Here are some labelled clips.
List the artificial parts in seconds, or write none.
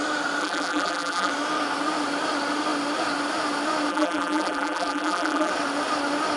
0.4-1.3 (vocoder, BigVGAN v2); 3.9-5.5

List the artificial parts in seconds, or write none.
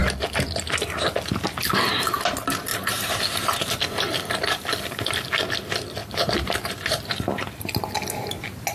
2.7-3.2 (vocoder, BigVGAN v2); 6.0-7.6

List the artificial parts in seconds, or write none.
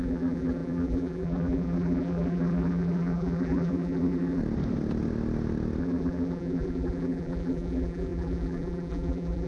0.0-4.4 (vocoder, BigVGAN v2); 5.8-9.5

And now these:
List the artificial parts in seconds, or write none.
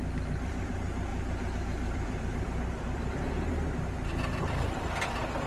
0.0-0.7 (vocoder, BigVGAN v2); 1.1-3.3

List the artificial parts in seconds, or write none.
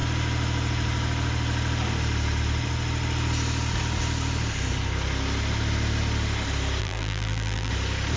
6.8-7.7 (vocoder, BigVGAN v2)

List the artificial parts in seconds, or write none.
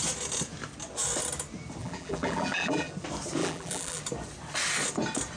1.8-2.9 (vocoder, BigVGAN v2); 3.4-4.0